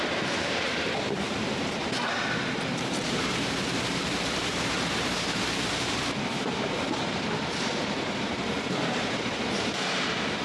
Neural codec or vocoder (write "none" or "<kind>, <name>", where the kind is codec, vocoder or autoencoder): vocoder, BigVGAN v2